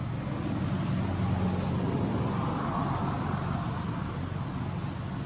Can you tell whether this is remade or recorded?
recorded